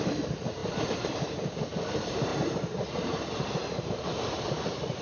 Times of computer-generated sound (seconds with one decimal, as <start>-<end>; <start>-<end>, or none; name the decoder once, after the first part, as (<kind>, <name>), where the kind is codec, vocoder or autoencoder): 0.0-5.0 (vocoder, BigVGAN v2)